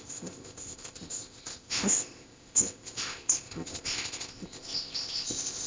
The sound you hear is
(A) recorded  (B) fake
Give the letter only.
B